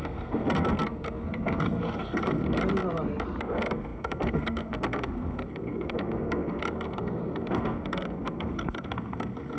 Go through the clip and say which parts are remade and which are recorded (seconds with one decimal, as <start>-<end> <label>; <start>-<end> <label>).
0.0-2.6 remade; 2.6-3.4 recorded; 3.4-9.6 remade